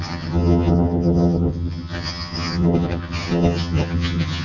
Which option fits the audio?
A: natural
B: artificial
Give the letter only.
B